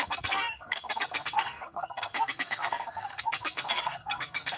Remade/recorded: remade